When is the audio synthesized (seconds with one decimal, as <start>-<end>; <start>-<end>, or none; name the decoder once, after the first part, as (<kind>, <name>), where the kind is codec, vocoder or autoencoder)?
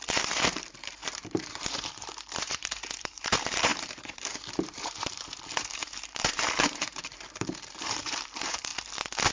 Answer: 0.0-8.7 (vocoder, BigVGAN v2)